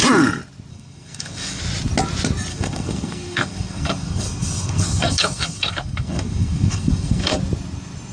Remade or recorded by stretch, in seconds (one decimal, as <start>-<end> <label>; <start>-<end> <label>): 0.0-0.7 recorded; 0.7-1.6 remade; 1.6-2.5 recorded; 2.5-7.4 remade; 7.4-8.1 recorded